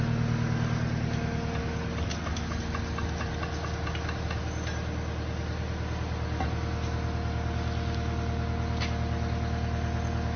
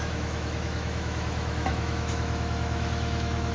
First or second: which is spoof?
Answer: second